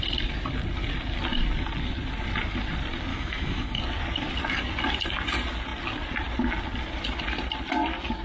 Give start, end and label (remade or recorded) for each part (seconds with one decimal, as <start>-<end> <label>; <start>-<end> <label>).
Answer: 0.0-3.1 recorded; 3.1-3.8 remade; 3.8-8.2 recorded